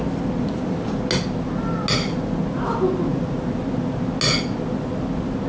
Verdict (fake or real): real